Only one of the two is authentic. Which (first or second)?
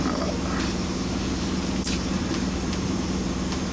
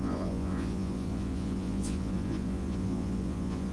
first